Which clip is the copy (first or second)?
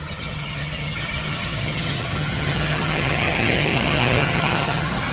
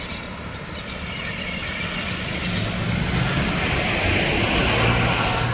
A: first